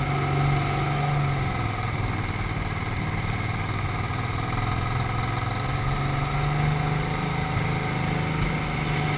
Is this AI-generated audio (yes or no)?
no